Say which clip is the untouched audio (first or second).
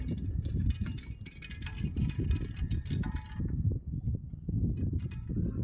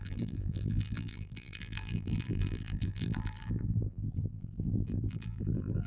first